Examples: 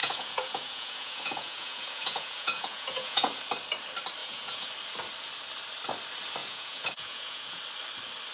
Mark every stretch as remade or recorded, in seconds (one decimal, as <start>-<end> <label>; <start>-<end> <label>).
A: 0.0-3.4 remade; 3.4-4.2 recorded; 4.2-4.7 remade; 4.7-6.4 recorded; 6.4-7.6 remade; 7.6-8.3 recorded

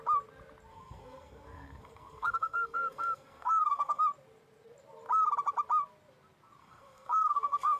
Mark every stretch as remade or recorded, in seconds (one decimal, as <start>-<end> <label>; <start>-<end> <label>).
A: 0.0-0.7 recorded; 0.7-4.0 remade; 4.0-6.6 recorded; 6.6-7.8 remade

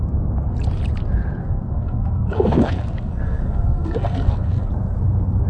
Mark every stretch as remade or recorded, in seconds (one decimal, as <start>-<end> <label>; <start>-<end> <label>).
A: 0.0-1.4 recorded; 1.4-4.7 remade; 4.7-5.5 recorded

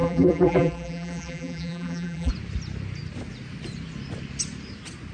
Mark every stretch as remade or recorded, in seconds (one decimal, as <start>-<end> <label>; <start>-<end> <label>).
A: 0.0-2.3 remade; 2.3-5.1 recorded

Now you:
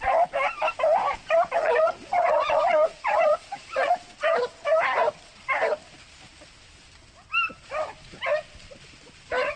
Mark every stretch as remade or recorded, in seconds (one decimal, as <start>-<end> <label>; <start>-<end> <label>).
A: 0.0-1.6 recorded; 1.6-3.9 remade; 3.9-9.6 recorded

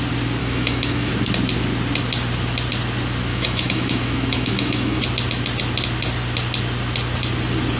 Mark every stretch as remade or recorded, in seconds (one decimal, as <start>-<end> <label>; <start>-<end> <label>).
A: 0.0-0.4 recorded; 0.4-1.1 remade; 1.1-3.3 recorded; 3.3-5.0 remade; 5.0-7.8 recorded

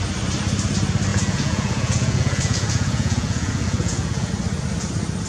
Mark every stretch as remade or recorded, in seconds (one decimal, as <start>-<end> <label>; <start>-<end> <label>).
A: 0.0-1.1 recorded; 1.1-4.3 remade; 4.3-5.3 recorded